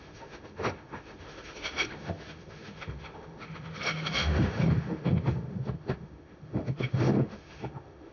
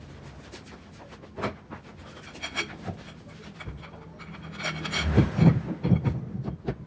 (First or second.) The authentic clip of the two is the second